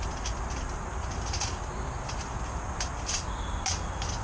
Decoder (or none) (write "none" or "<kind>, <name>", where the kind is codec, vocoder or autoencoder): none